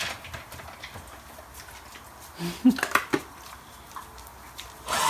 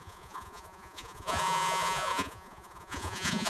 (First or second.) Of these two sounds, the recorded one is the first